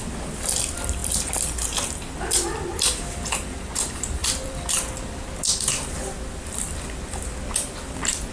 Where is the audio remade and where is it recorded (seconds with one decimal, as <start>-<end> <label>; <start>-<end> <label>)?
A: 0.0-4.2 recorded; 4.2-4.7 remade; 4.7-8.3 recorded